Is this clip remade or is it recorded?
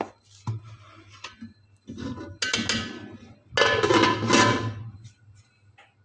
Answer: recorded